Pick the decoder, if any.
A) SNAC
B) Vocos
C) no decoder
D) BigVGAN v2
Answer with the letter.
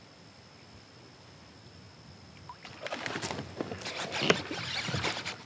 C